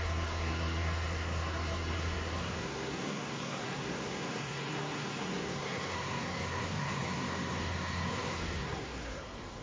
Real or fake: fake